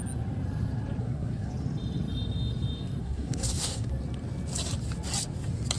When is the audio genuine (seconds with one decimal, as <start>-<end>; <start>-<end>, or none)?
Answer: 0.0-1.0; 1.5-3.0; 3.9-5.8